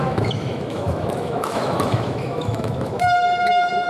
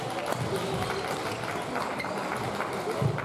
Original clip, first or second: second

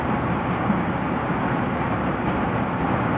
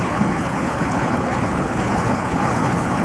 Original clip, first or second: first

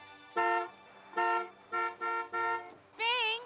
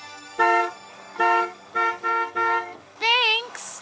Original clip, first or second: first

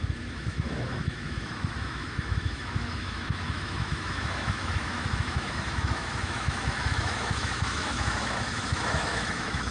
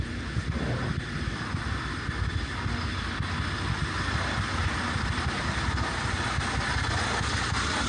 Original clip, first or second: second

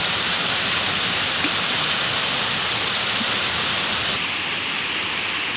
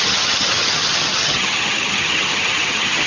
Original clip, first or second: first